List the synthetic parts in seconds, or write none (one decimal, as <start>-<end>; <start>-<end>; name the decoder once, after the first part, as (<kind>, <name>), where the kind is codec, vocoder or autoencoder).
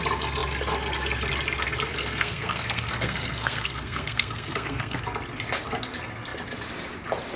1.9-5.0 (codec, SNAC)